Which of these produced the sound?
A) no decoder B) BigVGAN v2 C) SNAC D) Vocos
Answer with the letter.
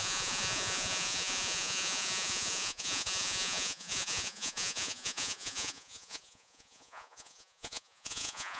D